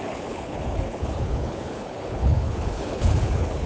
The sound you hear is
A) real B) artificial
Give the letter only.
B